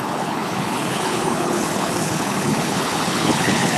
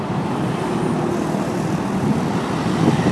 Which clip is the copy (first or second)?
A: first